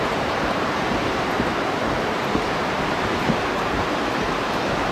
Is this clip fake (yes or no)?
yes